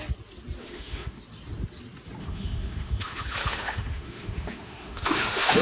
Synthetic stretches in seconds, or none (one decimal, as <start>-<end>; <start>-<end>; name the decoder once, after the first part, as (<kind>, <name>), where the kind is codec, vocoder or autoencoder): 0.6-1.2 (autoencoder, DAC-VAE); 2.2-5.6